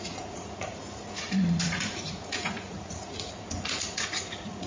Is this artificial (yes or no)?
yes